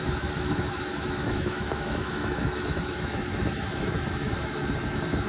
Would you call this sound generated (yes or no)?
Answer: yes